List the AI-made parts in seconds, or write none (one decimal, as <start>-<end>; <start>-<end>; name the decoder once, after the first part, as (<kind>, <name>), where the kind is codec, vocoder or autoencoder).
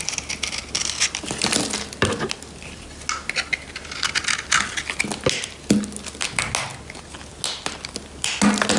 none